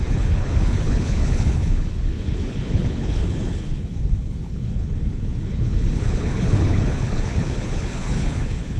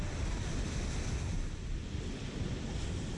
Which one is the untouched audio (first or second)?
second